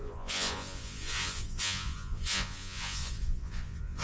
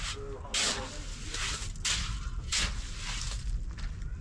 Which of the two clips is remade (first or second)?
first